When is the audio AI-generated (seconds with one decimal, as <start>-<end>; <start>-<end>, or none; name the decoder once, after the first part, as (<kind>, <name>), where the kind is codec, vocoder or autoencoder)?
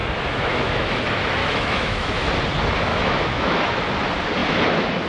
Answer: 0.0-1.0 (autoencoder, DAC-VAE); 1.4-2.3; 2.9-3.8